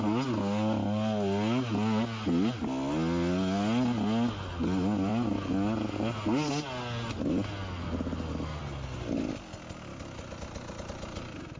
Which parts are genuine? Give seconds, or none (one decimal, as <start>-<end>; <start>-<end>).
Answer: 0.0-11.6